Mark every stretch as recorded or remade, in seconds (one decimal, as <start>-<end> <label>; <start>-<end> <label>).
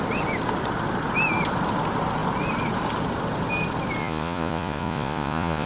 0.0-4.0 recorded; 4.0-5.7 remade